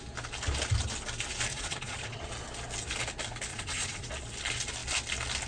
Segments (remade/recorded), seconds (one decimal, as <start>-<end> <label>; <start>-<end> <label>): 0.0-1.5 recorded; 1.5-2.3 remade; 2.3-3.5 recorded; 3.5-4.1 remade; 4.1-5.5 recorded